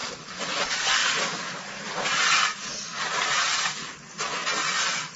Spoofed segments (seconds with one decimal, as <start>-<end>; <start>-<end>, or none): none